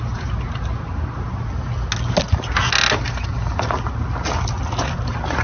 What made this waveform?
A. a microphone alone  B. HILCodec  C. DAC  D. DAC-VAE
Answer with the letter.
A